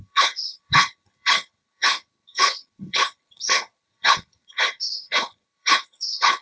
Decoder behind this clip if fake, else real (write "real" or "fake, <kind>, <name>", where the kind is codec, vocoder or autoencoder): fake, codec, HILCodec